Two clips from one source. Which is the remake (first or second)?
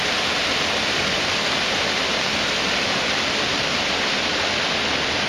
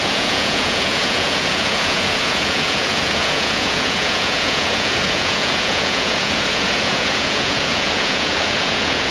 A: second